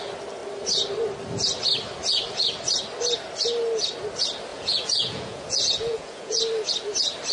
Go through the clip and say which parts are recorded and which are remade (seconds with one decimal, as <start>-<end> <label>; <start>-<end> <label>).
0.0-4.5 recorded; 4.5-6.4 remade; 6.4-7.3 recorded